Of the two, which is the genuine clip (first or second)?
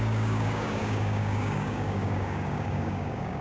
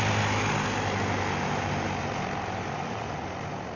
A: second